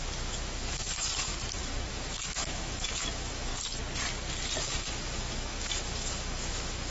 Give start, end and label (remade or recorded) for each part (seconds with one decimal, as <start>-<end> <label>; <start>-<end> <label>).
0.0-3.5 remade; 3.5-4.6 recorded; 4.6-6.9 remade